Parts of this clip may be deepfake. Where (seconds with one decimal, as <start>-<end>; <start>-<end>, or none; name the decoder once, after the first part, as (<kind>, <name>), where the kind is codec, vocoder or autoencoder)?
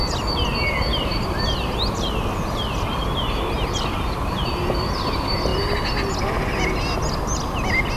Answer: 0.9-2.2 (vocoder, BigVGAN v2)